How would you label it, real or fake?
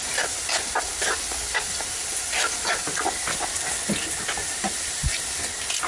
real